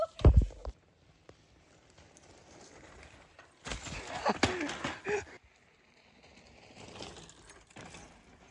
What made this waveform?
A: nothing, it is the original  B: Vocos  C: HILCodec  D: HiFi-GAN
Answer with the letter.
A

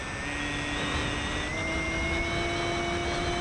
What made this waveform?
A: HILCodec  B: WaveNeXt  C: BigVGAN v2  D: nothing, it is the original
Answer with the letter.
D